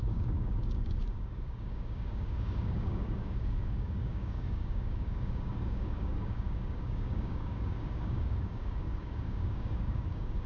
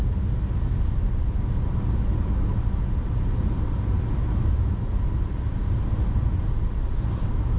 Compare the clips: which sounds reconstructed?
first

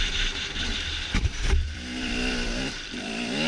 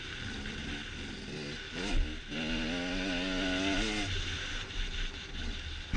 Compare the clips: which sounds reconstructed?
first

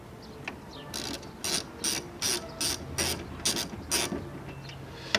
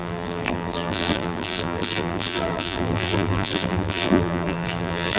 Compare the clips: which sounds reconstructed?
second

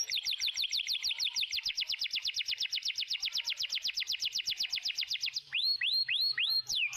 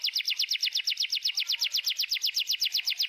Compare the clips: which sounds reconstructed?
first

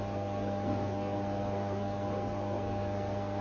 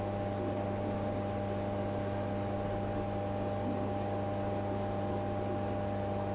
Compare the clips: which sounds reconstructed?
first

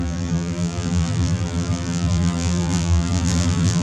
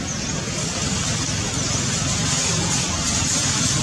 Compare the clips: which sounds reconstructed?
first